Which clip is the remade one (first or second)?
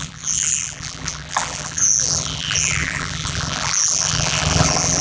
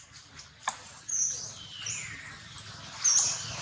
first